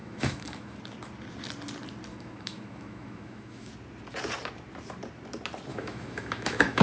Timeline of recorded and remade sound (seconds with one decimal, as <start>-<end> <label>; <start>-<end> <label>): 0.0-0.8 remade; 0.8-2.1 recorded; 2.1-3.7 remade; 3.7-5.7 recorded; 5.7-6.8 remade